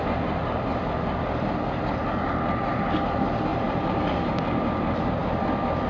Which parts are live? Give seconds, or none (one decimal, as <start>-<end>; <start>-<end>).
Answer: 0.0-3.5; 4.3-5.9